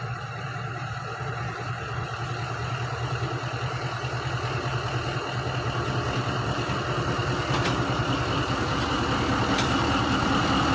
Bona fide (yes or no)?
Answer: yes